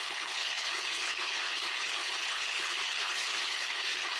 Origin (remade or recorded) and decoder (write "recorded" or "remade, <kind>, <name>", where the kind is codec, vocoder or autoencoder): remade, codec, HILCodec